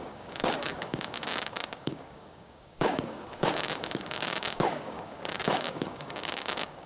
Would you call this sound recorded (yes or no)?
no